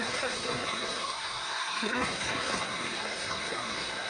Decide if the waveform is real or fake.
fake